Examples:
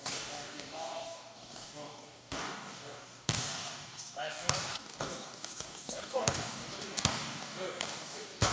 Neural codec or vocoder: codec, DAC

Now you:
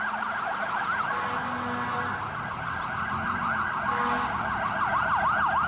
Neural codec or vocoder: none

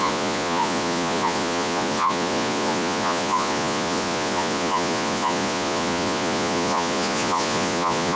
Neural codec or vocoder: vocoder, Vocos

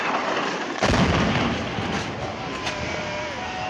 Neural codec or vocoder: none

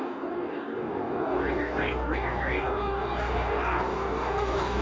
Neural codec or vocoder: codec, DAC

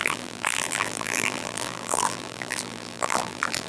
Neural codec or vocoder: vocoder, BigVGAN v2